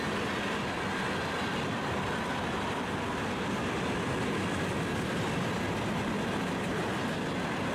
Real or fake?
real